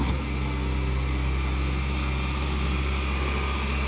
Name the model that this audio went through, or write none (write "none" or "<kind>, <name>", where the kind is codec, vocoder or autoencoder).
none